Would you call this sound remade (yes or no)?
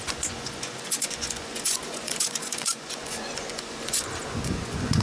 yes